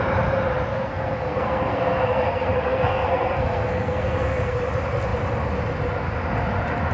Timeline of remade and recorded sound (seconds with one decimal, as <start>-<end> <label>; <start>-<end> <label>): 0.0-0.7 recorded; 0.7-4.6 remade; 4.6-6.9 recorded